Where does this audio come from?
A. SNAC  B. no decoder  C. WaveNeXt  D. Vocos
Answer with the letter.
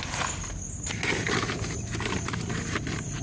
B